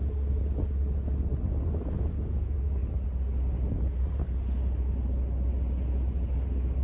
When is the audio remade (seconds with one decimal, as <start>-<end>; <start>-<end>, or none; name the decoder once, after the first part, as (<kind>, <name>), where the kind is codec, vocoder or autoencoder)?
none